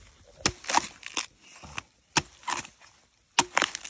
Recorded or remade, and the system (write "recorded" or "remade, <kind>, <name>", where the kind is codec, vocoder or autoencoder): recorded